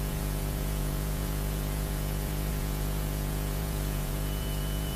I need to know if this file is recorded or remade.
remade